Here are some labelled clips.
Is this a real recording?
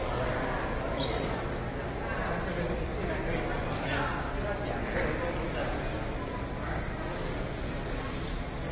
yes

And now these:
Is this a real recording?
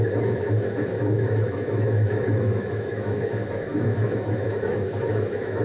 no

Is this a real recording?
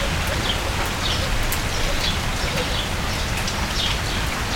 yes